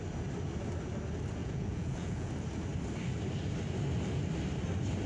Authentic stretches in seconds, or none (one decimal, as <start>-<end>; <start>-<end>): 0.0-1.4; 2.3-5.1